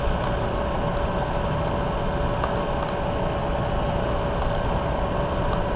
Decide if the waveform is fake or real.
real